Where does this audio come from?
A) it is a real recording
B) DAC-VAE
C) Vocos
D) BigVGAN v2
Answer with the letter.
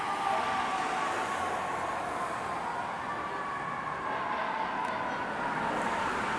A